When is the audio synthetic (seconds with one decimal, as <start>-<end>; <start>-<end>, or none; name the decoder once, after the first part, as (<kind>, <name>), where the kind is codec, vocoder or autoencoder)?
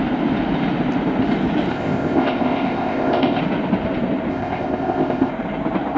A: 1.7-3.4 (codec, ZipCodec); 4.3-5.3